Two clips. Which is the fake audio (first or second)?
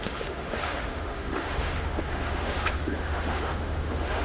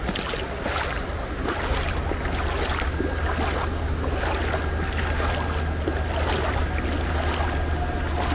first